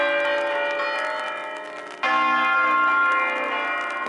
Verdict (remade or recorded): recorded